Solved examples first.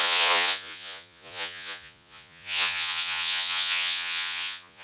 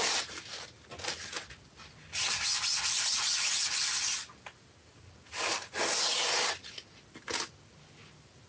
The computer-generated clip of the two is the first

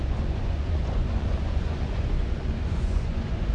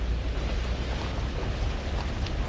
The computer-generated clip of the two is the first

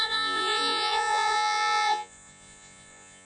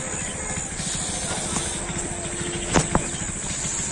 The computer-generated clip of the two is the first